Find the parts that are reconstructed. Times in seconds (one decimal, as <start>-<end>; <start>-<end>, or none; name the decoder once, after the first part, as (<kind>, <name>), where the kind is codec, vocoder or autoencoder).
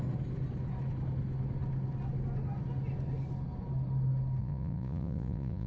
4.4-5.7 (vocoder, Vocos)